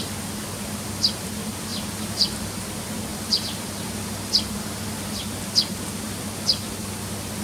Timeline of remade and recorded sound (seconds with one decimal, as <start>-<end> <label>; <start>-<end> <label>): 0.0-1.7 recorded; 1.7-2.6 remade; 2.6-3.1 recorded; 3.1-5.1 remade; 5.1-7.4 recorded

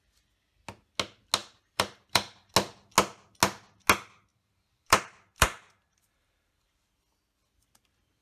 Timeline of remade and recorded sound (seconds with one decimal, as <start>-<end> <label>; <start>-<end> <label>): 0.0-1.4 recorded; 1.4-2.5 remade; 2.5-4.3 recorded; 4.3-7.0 remade; 7.0-8.2 recorded

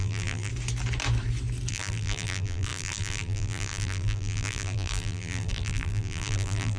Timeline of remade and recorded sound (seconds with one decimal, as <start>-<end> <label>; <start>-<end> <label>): 0.0-0.5 remade; 0.5-1.7 recorded; 1.7-6.8 remade

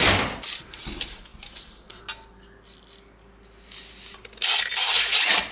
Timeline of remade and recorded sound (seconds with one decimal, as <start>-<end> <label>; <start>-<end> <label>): 0.0-5.5 recorded

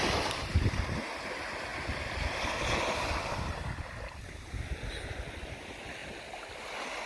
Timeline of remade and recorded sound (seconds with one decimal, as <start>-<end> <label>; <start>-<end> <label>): 0.0-1.7 recorded; 1.7-4.3 remade; 4.3-7.1 recorded

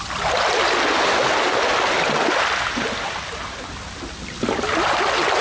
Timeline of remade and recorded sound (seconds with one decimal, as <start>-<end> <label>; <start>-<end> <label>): 0.0-5.4 recorded